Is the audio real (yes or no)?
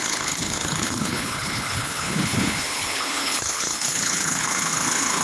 no